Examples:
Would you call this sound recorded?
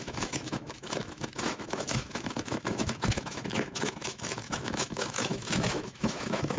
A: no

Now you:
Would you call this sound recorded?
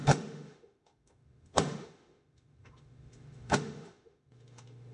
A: no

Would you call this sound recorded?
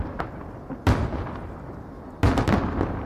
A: yes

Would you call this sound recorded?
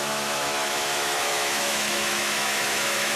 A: no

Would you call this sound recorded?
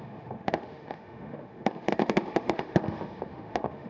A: no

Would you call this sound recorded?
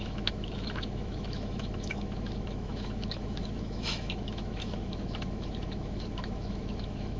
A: no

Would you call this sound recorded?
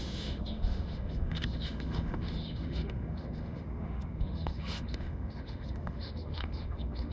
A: no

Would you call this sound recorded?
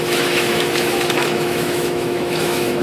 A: no